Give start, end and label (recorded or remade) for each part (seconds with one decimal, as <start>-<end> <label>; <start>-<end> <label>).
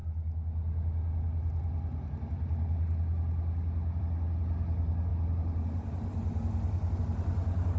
0.0-7.8 recorded